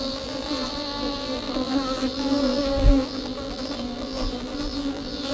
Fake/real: fake